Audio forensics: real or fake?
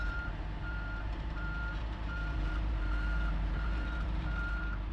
fake